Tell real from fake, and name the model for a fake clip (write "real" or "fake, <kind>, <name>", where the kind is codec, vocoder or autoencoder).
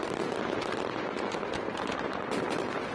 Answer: real